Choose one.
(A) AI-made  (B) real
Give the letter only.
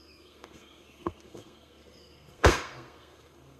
A